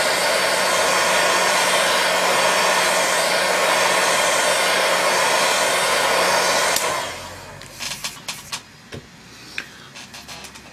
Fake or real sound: real